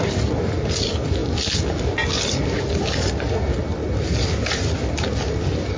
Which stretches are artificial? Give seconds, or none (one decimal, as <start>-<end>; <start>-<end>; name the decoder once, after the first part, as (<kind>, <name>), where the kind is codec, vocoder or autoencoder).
none